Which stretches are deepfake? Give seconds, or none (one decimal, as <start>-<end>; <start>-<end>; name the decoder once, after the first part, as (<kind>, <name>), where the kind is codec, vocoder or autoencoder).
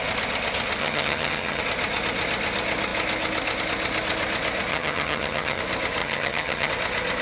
0.8-1.6 (vocoder, HiFi-GAN); 4.7-5.6; 6.0-6.7